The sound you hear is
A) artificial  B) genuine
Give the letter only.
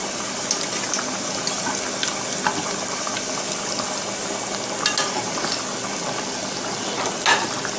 B